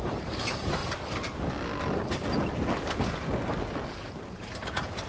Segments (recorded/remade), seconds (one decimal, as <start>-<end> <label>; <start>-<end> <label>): 0.0-0.8 remade; 0.8-3.9 recorded; 3.9-5.1 remade